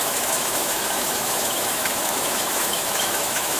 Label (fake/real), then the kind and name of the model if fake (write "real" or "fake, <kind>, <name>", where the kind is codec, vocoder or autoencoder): fake, autoencoder, DAC-VAE